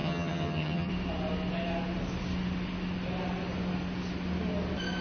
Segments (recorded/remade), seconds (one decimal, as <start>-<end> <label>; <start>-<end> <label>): 0.0-0.9 remade; 0.9-5.0 recorded